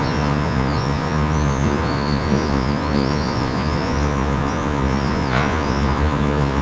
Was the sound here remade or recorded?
remade